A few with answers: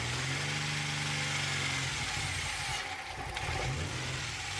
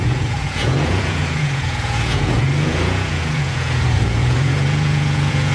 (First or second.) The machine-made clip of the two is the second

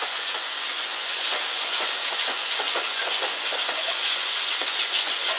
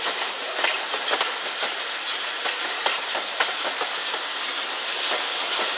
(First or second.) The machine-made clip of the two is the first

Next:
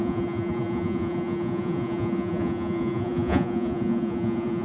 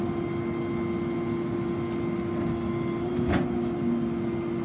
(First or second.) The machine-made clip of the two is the first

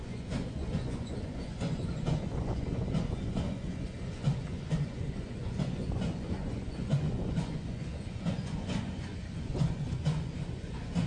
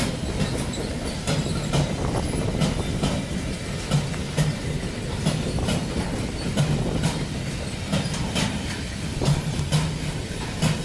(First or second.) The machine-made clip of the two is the first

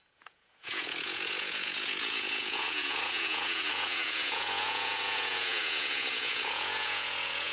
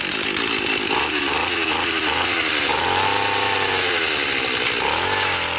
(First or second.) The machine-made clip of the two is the first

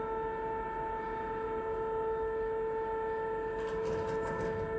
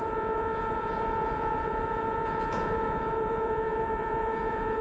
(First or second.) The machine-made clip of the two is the second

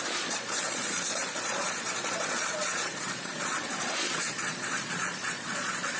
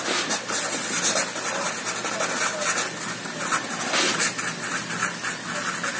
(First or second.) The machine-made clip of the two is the first